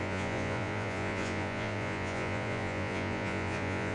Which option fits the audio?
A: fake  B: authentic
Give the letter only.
A